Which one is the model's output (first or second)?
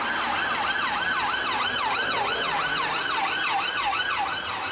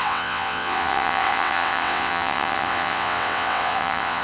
second